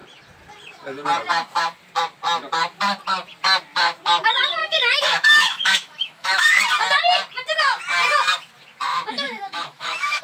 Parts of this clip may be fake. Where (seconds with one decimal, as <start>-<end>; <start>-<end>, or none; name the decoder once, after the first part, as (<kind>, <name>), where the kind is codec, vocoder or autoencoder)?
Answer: 4.6-6.6 (autoencoder, DAC-VAE); 8.9-10.2